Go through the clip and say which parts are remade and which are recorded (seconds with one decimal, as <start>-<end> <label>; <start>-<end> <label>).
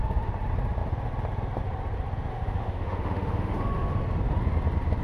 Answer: 0.0-2.3 recorded; 2.3-3.9 remade; 3.9-5.0 recorded